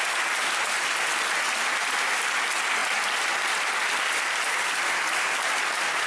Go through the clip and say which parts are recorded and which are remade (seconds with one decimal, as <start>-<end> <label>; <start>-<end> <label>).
0.0-6.1 recorded